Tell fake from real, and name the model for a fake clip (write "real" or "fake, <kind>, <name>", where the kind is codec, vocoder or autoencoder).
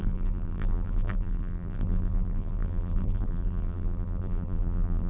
fake, vocoder, BigVGAN v2